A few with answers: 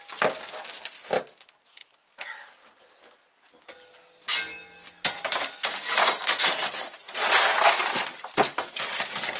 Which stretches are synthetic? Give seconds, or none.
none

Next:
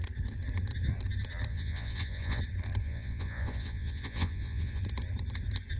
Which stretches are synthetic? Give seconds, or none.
1.5-2.4 (vocoder, Vocos); 2.8-4.8

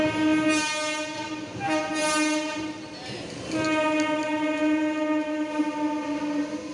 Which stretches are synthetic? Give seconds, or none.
none

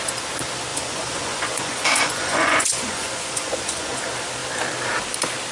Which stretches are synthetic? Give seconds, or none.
0.7-4.0 (vocoder, Vocos)

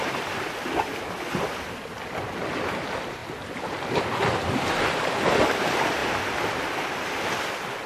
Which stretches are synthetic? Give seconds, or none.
none

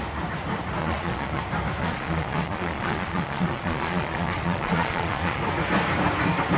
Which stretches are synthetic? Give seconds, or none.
0.8-1.4 (vocoder, Vocos); 1.8-5.4

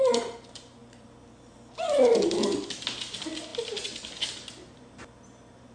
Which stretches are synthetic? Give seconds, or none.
none

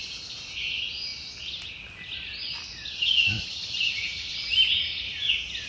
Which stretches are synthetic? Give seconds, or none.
none